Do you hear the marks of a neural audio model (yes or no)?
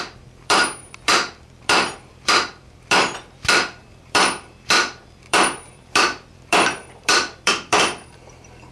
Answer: yes